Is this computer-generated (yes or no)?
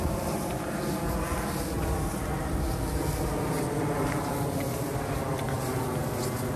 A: no